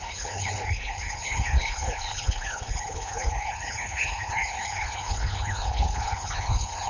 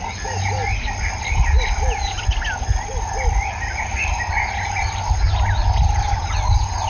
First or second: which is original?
second